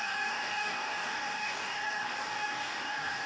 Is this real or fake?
fake